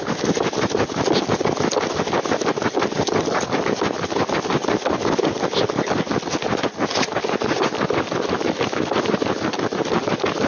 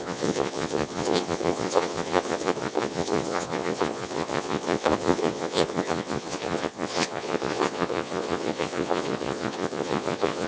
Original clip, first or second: first